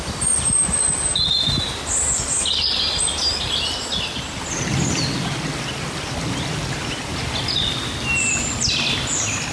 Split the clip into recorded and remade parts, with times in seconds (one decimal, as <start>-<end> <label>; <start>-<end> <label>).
0.0-9.5 recorded